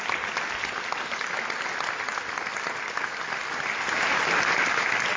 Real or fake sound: real